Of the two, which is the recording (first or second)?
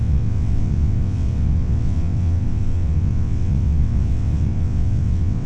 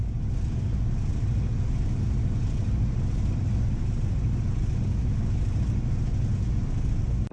second